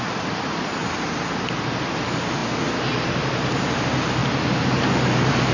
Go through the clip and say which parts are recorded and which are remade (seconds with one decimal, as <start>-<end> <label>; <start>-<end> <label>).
0.0-5.5 recorded